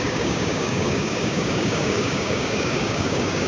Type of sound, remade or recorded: remade